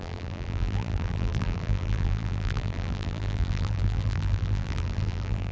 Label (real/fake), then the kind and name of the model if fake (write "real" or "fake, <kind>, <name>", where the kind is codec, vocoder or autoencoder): fake, vocoder, BigVGAN v2